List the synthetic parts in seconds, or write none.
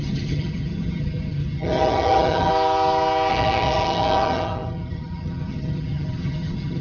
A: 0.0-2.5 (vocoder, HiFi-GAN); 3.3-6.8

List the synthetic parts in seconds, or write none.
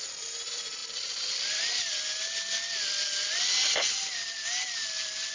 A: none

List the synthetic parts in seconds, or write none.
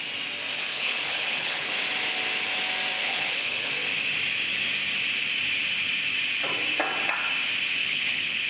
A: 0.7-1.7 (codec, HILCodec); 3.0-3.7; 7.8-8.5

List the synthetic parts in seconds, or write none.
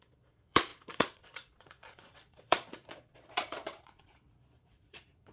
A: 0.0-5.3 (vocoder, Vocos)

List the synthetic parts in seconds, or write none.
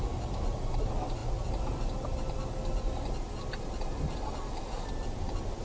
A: none